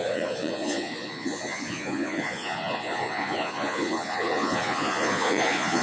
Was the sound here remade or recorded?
remade